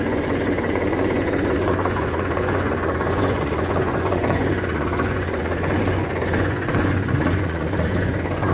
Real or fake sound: fake